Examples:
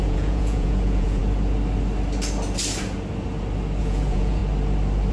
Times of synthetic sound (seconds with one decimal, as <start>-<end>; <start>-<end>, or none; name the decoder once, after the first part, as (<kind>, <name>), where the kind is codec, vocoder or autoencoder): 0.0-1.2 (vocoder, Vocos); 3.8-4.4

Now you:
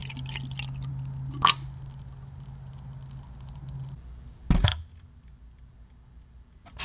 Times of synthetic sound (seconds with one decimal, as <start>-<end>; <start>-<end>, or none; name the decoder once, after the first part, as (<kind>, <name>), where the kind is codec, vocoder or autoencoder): none

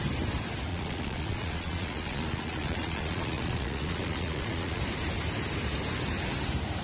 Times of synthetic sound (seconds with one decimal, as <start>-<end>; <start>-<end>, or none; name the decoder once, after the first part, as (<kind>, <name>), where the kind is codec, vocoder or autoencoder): 0.7-4.8 (vocoder, Vocos)

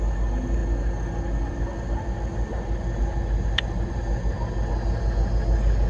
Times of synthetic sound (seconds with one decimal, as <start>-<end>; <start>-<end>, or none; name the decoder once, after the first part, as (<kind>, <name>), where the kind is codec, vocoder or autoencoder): none